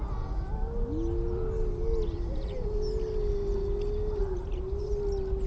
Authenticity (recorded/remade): recorded